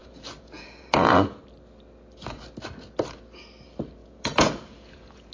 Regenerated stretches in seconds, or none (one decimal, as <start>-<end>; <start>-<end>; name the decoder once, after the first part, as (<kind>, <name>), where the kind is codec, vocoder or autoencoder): 0.0-1.4 (vocoder, Vocos); 4.0-5.3